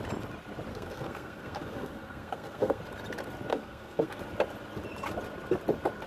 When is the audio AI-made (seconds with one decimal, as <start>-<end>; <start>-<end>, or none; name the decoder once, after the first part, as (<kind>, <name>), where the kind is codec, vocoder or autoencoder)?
0.7-2.8 (codec, SNAC); 3.5-4.2